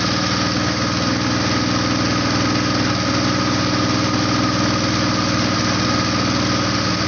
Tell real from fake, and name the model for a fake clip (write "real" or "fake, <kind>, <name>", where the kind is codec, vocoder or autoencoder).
real